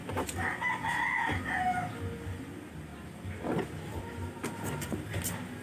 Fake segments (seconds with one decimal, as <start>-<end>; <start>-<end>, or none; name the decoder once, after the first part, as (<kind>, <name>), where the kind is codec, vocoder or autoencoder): none